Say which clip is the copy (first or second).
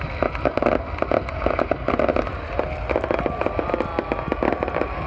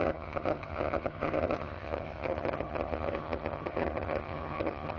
second